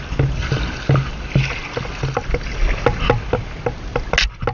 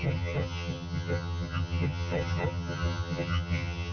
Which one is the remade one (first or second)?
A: second